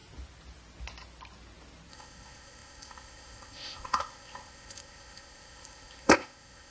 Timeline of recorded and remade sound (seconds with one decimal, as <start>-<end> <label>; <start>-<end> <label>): 0.0-1.9 recorded; 1.9-6.7 remade